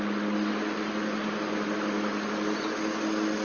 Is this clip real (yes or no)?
yes